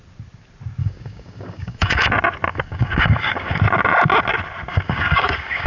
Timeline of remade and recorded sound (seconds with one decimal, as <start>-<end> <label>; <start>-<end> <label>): 0.0-0.8 recorded; 0.8-2.1 remade; 2.1-2.5 recorded; 2.5-3.6 remade; 3.6-4.7 recorded; 4.7-5.7 remade